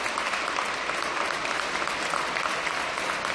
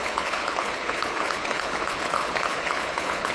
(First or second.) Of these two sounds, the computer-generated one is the second